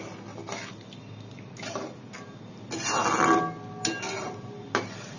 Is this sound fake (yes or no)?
no